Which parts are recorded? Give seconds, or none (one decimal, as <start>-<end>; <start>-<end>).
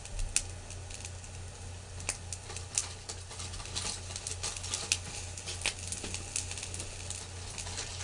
0.0-8.0